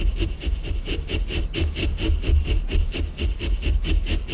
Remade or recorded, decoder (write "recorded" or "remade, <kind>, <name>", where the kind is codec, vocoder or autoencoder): recorded